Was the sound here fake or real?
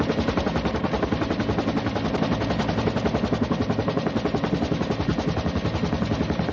real